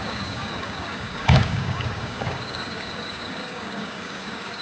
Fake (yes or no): yes